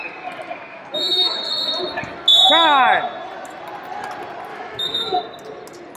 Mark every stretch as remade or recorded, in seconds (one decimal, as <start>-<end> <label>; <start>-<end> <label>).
0.0-0.7 recorded; 0.7-1.5 remade; 1.5-4.5 recorded; 4.5-5.2 remade; 5.2-6.0 recorded